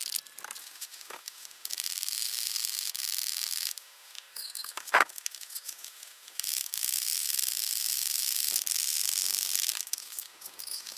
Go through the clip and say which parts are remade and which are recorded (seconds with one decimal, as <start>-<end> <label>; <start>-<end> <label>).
0.0-0.6 recorded; 0.6-11.0 remade